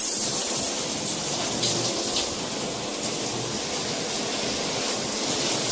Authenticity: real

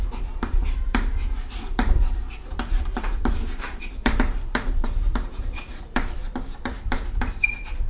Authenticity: fake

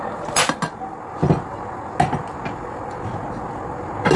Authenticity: real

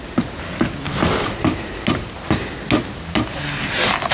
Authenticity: real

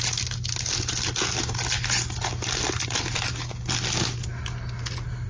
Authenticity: real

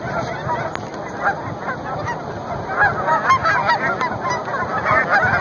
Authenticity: real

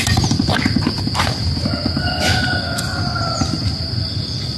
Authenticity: real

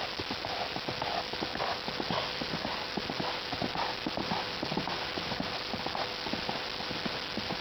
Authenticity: real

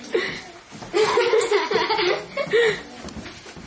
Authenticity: real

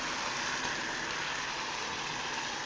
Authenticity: real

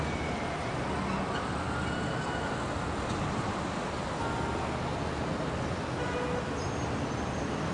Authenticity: real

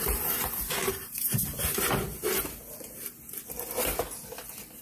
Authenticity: real